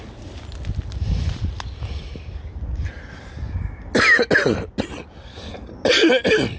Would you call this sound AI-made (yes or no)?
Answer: no